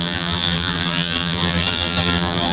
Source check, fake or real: fake